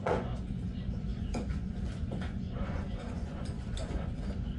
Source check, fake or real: fake